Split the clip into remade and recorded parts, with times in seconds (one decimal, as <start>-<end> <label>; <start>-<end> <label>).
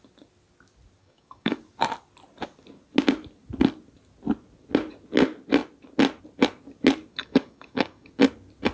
0.0-1.0 recorded; 1.0-1.6 remade; 1.6-7.1 recorded; 7.1-8.1 remade; 8.1-8.7 recorded